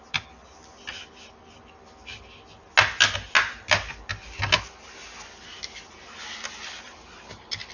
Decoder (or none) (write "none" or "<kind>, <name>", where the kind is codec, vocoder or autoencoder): none